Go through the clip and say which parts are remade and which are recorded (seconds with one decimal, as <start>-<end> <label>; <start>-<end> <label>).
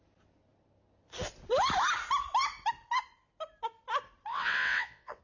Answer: 0.0-4.3 recorded; 4.3-5.2 remade